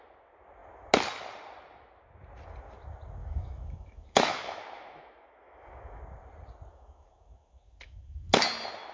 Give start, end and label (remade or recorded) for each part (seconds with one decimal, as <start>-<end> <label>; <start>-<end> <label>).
0.0-3.2 recorded; 3.2-6.0 remade; 6.0-6.7 recorded; 6.7-8.4 remade; 8.4-8.9 recorded